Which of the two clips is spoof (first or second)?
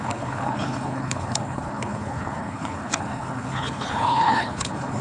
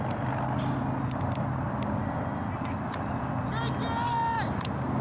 first